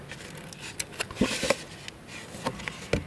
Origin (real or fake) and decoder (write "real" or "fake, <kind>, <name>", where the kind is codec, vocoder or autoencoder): real